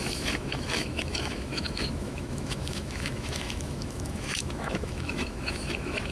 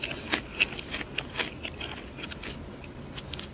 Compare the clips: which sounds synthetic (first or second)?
first